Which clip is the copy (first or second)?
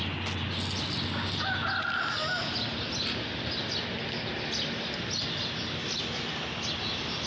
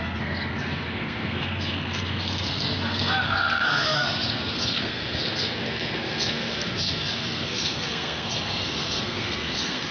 second